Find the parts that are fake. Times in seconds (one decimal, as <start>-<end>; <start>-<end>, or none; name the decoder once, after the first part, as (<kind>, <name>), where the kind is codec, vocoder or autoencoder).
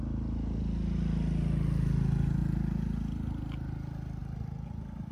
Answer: none